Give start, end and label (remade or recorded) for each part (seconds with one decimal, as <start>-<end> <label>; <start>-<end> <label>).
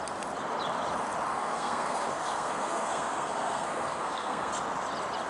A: 0.0-1.3 recorded; 1.3-4.5 remade; 4.5-5.3 recorded